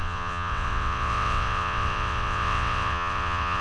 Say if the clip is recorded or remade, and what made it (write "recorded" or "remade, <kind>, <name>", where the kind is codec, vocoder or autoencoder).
remade, vocoder, WaveNeXt